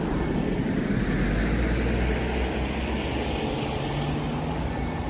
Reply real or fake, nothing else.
real